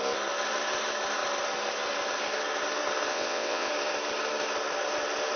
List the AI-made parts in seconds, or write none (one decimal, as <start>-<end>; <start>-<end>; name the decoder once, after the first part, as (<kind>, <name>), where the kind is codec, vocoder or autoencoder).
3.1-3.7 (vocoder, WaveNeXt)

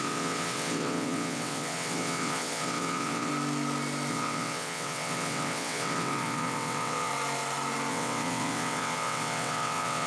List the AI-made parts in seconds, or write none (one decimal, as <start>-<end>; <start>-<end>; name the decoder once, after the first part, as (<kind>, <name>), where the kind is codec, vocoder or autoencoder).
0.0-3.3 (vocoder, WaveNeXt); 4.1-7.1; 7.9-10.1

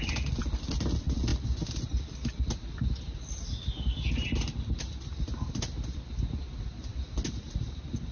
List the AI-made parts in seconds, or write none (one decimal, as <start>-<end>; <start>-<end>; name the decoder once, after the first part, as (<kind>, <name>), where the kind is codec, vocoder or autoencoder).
none

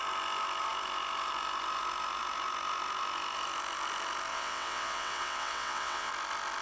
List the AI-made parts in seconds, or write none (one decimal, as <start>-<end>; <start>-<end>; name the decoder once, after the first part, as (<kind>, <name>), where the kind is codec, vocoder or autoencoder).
4.3-6.1 (vocoder, WaveNeXt)